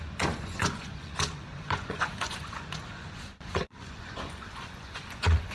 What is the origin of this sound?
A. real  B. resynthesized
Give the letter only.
B